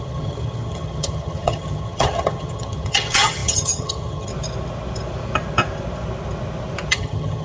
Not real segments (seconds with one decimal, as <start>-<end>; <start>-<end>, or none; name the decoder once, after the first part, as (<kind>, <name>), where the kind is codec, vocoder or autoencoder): 0.0-4.3 (vocoder, HiFi-GAN); 6.9-7.4